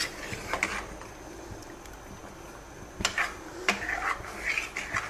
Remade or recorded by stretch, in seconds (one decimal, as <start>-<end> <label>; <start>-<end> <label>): 0.0-5.1 recorded